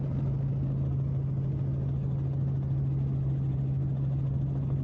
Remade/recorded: recorded